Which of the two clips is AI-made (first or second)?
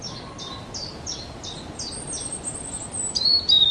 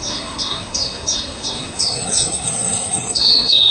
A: second